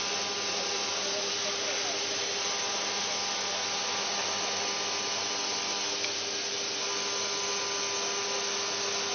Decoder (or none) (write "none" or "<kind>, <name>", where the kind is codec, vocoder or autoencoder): none